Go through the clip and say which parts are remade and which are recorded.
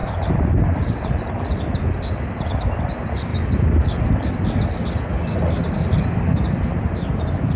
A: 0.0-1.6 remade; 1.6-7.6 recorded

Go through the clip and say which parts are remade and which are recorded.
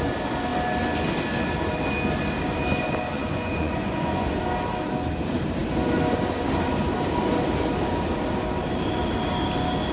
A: 0.0-3.1 recorded; 3.1-4.4 remade; 4.4-9.9 recorded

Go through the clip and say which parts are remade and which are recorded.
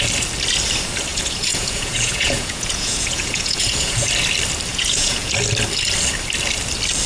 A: 0.0-1.1 recorded; 1.1-4.1 remade; 4.1-4.7 recorded; 4.7-5.3 remade; 5.3-7.1 recorded